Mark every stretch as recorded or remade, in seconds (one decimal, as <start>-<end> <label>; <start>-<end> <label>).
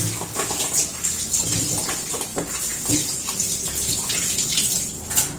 0.0-5.4 recorded